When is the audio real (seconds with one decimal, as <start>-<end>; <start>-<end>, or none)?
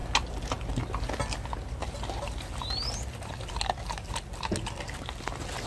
0.0-5.7